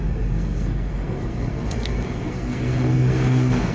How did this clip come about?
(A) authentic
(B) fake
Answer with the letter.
B